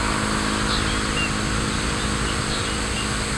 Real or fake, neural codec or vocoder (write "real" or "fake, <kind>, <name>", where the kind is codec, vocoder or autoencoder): real